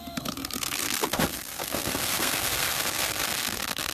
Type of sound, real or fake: fake